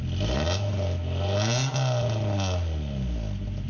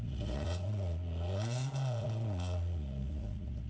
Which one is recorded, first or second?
first